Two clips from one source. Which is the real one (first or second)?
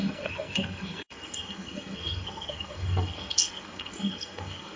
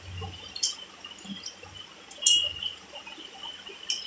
second